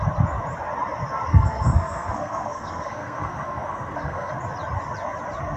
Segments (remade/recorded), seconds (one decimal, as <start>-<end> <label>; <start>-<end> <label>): 0.0-1.3 recorded; 1.3-4.3 remade; 4.3-5.6 recorded